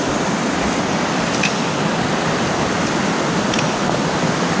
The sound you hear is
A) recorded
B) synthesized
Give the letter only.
A